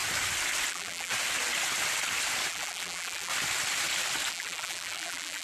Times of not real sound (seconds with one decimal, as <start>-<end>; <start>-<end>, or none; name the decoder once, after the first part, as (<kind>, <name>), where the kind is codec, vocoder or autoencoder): 0.7-1.1 (vocoder, BigVGAN v2); 2.5-3.3; 4.3-5.4